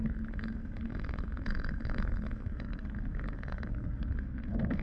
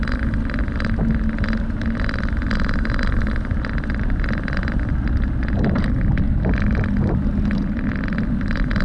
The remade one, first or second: first